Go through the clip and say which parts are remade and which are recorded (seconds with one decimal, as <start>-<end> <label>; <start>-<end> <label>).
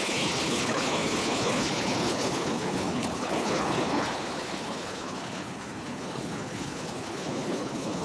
0.0-8.0 remade